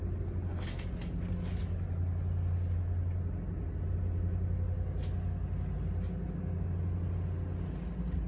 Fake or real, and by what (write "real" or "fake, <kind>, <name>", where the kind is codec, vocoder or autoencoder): real